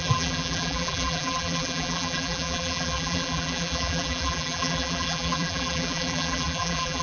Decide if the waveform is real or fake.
fake